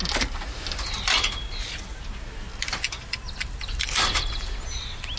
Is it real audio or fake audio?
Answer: real